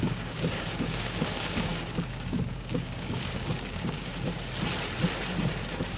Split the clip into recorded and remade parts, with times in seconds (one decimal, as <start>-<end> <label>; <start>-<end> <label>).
0.0-4.1 remade; 4.1-6.0 recorded